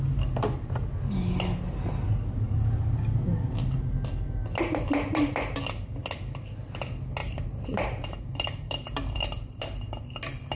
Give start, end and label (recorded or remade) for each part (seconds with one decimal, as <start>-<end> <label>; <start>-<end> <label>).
0.0-7.2 recorded; 7.2-9.6 remade; 9.6-10.6 recorded